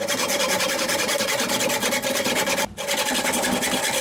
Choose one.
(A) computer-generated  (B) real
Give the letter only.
A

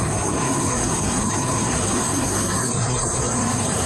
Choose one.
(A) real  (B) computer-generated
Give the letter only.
B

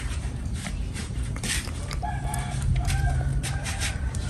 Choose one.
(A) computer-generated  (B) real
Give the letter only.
A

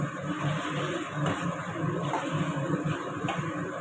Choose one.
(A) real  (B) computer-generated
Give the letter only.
A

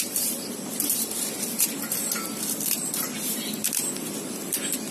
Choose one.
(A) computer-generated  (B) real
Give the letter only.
A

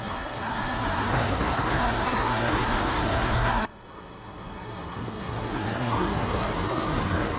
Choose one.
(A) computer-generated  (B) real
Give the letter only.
A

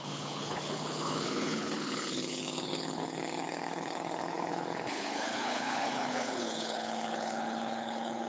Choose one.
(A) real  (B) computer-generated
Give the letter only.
B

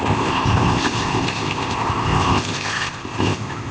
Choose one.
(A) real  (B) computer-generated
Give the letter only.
B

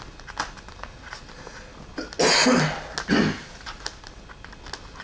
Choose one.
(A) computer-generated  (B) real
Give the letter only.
B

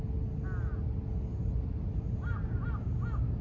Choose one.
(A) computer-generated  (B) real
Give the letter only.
B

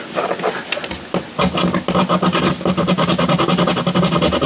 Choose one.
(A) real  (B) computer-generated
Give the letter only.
A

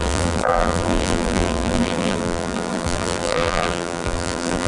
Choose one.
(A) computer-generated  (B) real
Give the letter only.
A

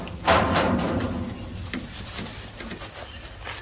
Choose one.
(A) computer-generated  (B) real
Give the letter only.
B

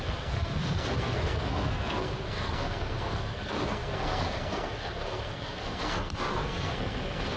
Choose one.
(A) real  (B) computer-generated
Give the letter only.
B